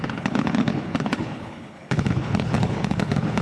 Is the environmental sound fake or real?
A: fake